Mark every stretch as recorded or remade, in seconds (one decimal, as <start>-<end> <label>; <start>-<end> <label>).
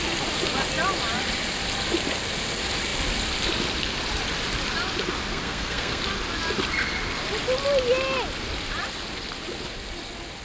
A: 0.0-5.3 recorded; 5.3-6.0 remade; 6.0-10.4 recorded